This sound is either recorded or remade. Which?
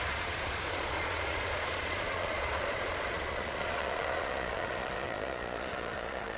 remade